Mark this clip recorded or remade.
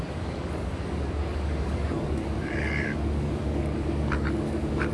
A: remade